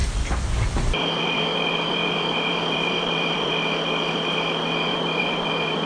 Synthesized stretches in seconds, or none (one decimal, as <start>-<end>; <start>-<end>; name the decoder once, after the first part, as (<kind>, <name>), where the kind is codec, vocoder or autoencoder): 0.0-3.5 (vocoder, BigVGAN v2); 4.9-5.9